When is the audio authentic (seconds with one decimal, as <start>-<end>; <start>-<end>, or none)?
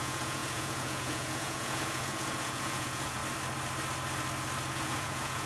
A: 3.2-4.7